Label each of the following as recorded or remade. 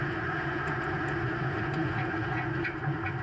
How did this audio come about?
remade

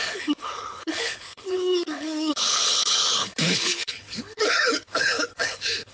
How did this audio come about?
remade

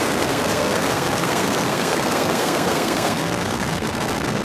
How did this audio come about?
remade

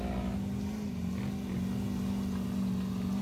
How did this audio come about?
recorded